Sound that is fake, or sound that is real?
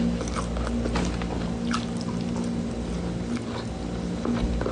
real